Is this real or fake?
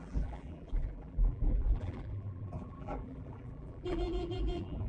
fake